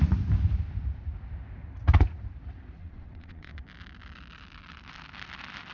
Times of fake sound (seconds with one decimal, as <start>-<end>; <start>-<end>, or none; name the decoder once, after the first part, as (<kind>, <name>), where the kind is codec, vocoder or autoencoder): 2.8-3.6 (vocoder, Vocos)